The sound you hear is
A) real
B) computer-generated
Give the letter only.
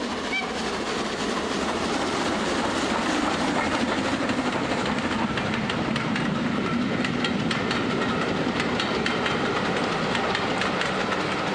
A